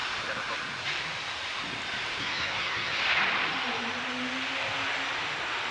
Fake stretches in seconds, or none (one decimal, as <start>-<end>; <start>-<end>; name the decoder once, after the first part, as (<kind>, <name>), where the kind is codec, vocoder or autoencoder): 2.2-3.0 (codec, SNAC)